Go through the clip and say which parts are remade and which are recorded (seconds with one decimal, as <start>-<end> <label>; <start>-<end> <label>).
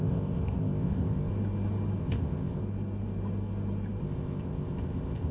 0.0-1.3 remade; 1.3-2.0 recorded; 2.0-2.6 remade; 2.6-4.0 recorded; 4.0-5.3 remade